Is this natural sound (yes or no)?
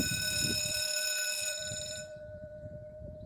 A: no